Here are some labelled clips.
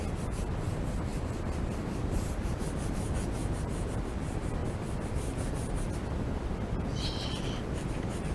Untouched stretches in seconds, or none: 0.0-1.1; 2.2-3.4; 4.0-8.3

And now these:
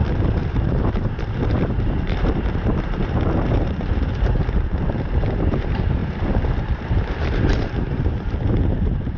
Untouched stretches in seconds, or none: none

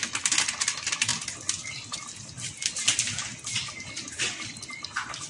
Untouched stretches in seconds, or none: 0.0-5.3